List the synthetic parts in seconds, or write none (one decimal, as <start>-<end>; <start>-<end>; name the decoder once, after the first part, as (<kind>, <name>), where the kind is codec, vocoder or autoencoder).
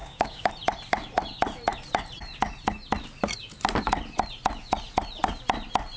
0.0-0.5 (codec, DAC)